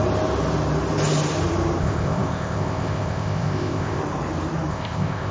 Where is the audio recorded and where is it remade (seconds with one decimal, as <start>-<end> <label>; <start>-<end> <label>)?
0.0-1.8 recorded; 1.8-4.0 remade; 4.0-4.7 recorded; 4.7-5.3 remade